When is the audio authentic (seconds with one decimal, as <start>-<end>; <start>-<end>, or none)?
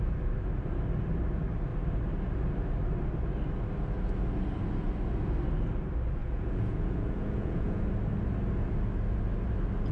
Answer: 0.0-6.2; 7.8-9.9